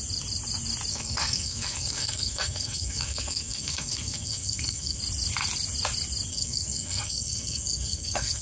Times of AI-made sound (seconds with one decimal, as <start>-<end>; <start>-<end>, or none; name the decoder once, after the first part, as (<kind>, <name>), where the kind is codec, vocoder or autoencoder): 0.9-5.0 (codec, SNAC); 6.3-8.4